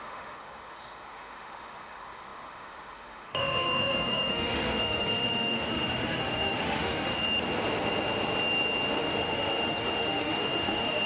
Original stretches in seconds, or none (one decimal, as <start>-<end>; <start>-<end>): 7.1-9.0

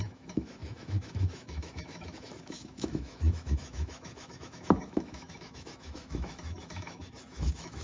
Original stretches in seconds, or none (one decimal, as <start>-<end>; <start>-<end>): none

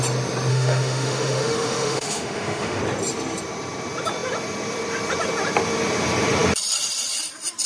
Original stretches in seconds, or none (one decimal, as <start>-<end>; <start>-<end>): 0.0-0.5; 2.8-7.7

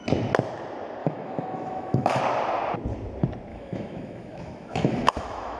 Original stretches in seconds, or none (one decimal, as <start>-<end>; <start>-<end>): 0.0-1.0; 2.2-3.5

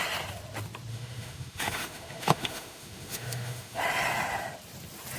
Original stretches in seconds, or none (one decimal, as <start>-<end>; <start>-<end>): 0.0-0.9; 3.8-5.2

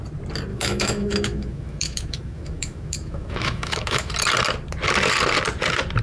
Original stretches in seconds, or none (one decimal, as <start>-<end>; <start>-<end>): 0.0-0.5; 4.1-6.0

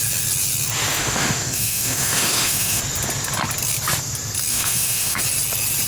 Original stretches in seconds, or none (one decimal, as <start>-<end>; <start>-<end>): 0.0-0.9; 2.8-4.5; 5.2-5.9